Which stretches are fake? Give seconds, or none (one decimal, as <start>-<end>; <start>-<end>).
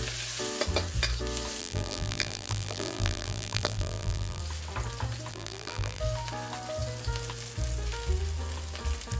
1.6-4.4; 5.3-6.0